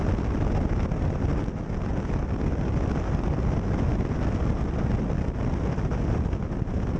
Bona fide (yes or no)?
yes